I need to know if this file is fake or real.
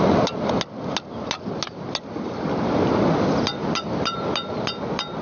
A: real